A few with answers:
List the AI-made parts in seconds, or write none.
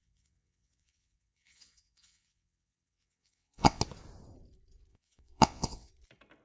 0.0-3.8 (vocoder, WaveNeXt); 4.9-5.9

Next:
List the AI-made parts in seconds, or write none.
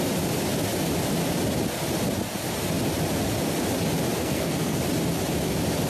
4.2-4.8 (codec, SNAC)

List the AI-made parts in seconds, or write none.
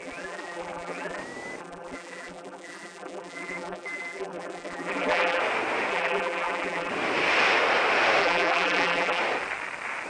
0.0-1.2 (vocoder, BigVGAN v2); 1.6-5.4; 5.9-6.9; 8.2-9.2